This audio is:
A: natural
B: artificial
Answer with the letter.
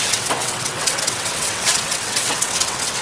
B